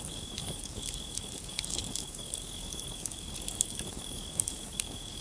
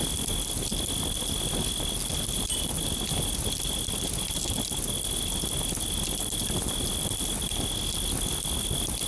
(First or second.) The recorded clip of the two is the second